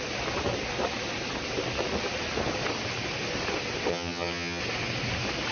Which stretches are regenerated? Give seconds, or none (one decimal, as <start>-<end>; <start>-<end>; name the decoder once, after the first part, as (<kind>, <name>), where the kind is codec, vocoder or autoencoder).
3.9-4.6 (vocoder, HiFi-GAN)